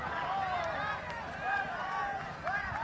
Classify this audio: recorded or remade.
recorded